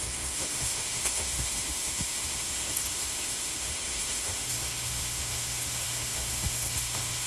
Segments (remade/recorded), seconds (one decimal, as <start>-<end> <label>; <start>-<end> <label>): 0.0-7.3 remade